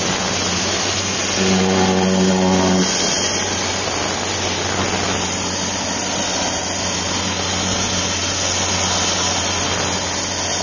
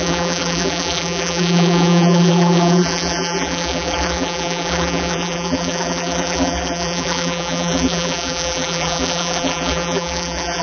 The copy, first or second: second